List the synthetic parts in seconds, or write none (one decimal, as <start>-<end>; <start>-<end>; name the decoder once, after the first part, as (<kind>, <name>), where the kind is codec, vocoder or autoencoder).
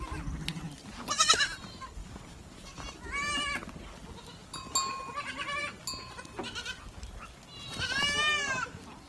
2.0-3.3 (vocoder, BigVGAN v2)